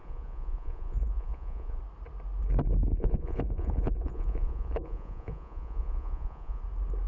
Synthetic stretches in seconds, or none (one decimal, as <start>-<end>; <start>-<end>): 0.0-1.8; 2.9-6.6